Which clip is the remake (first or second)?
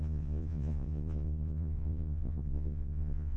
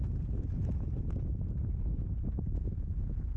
first